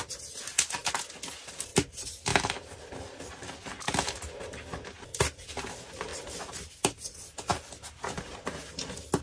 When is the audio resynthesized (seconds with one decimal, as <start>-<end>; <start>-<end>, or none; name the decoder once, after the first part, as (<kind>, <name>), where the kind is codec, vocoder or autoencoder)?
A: 2.3-4.1 (vocoder, BigVGAN v2); 7.5-8.0